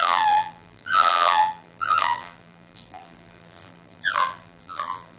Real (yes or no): no